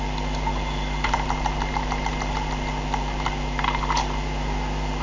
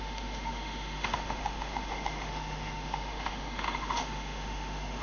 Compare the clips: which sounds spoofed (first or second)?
second